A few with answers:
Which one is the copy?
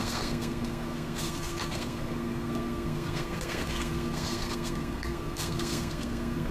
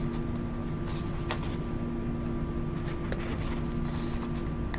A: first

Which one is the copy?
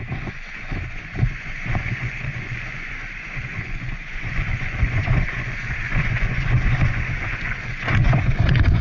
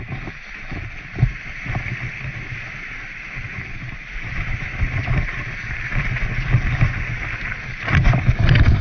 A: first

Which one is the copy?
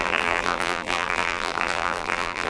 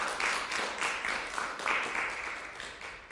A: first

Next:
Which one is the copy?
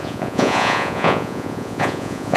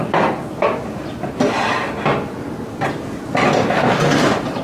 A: first